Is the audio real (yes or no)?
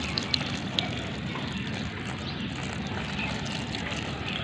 yes